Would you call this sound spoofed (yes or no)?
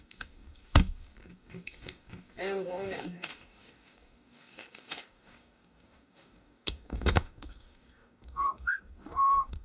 yes